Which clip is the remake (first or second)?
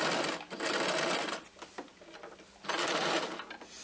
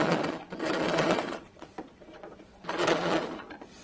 second